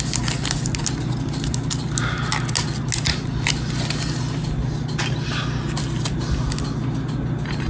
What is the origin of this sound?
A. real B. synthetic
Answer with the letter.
A